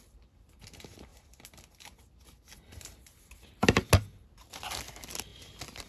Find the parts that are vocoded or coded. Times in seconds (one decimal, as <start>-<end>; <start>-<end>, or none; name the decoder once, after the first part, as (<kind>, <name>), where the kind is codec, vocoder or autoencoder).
none